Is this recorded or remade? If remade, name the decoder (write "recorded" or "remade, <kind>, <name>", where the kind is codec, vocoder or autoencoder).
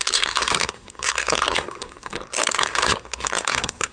remade, codec, SNAC